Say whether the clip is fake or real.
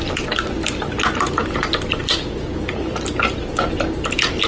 real